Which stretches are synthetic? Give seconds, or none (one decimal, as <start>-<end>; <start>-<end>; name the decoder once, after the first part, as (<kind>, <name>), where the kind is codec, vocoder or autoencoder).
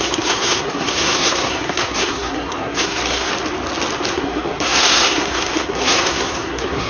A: 0.0-3.3 (codec, SNAC); 4.1-6.9